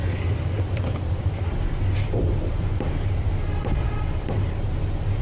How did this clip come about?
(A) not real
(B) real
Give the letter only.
A